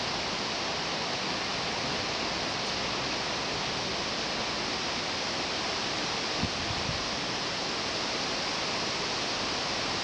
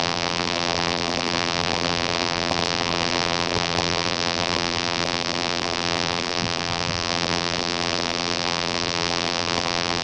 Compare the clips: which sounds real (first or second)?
first